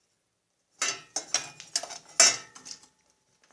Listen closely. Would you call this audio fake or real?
real